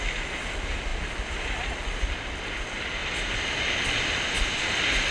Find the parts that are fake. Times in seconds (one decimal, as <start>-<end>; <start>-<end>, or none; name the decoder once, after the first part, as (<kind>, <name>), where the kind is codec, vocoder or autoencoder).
none